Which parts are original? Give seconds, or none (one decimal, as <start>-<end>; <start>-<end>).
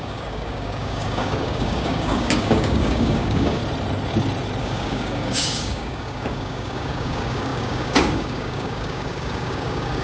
3.6-4.6